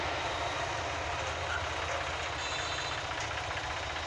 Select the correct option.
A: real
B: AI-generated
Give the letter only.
A